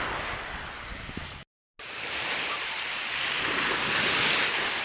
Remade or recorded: recorded